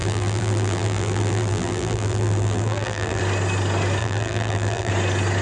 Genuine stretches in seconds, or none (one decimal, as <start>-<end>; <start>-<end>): 3.2-4.0; 4.9-5.4